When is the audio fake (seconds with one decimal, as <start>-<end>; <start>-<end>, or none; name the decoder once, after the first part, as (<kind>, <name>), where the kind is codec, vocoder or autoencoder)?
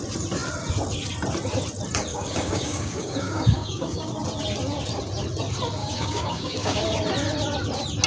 2.1-4.1 (codec, DAC); 5.8-6.8